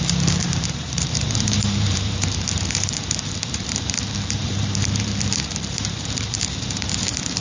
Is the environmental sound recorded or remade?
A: remade